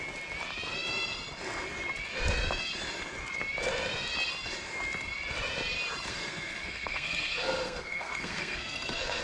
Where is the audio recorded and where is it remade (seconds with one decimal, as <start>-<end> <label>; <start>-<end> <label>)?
0.0-6.1 recorded; 6.1-9.2 remade